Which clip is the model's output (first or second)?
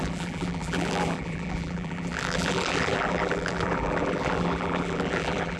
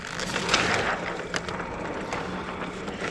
first